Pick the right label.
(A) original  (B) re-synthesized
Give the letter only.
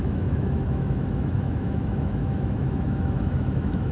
B